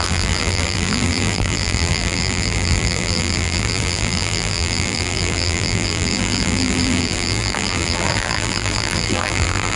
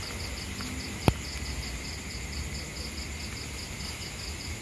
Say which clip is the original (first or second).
second